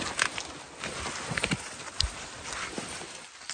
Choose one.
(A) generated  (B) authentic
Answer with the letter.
B